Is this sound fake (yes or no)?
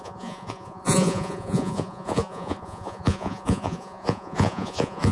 yes